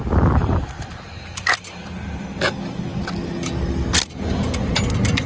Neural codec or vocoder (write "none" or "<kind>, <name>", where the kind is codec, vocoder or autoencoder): none